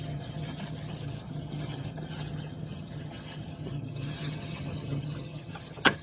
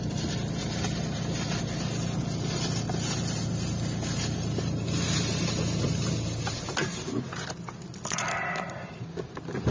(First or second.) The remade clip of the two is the first